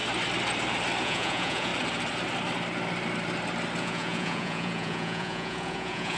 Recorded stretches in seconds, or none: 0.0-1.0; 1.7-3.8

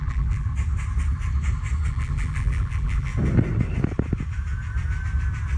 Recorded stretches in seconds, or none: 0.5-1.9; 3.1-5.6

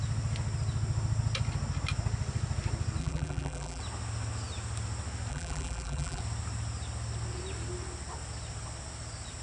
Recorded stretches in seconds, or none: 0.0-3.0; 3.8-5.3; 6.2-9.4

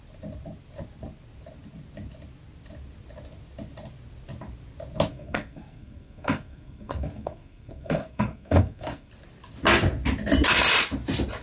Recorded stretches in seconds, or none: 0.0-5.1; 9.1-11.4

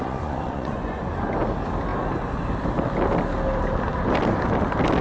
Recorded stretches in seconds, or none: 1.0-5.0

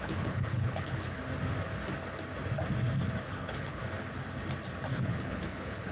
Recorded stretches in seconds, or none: 1.2-3.2; 3.8-4.9

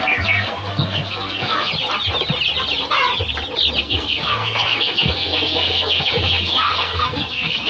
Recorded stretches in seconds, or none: 1.7-3.8

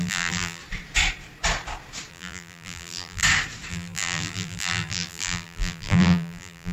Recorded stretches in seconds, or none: 0.6-2.1; 3.2-3.7